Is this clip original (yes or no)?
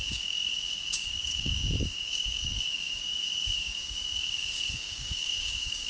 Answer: no